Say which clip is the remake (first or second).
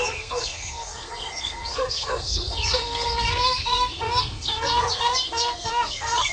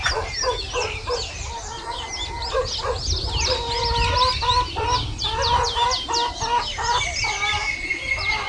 first